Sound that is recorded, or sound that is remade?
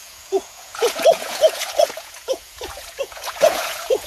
remade